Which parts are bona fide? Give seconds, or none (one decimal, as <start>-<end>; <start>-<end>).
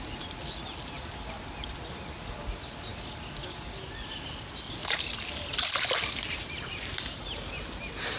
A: 0.0-8.2